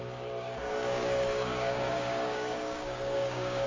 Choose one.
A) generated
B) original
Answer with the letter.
A